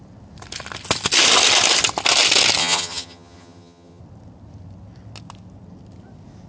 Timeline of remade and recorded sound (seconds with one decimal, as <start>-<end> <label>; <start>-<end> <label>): 0.0-2.6 recorded; 2.6-4.0 remade; 4.0-6.5 recorded